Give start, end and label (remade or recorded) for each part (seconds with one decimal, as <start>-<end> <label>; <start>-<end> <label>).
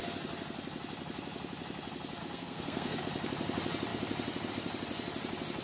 0.0-2.2 recorded; 2.2-3.0 remade; 3.0-5.6 recorded